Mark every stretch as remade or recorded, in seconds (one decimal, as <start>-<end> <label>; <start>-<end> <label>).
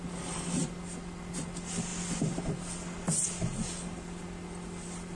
0.0-5.1 recorded